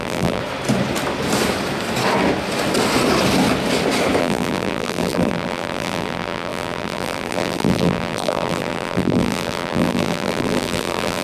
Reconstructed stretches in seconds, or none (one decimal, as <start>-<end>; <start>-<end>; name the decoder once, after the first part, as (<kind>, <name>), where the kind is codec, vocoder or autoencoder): 0.0-0.4 (vocoder, BigVGAN v2); 4.2-11.2